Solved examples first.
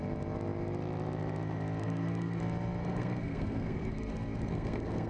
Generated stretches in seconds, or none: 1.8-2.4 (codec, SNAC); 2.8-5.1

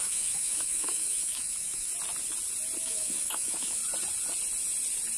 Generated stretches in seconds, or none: 0.0-1.9 (autoencoder, DAC-VAE); 2.8-3.8